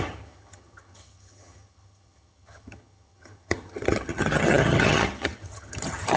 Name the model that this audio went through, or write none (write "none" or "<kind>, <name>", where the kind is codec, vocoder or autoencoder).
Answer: vocoder, HiFi-GAN